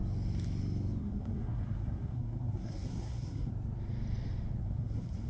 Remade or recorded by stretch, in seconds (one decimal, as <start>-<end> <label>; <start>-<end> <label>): 0.0-1.0 recorded; 1.0-3.5 remade; 3.5-4.6 recorded; 4.6-5.3 remade